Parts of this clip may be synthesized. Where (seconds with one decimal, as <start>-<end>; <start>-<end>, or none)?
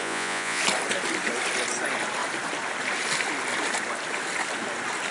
0.0-0.6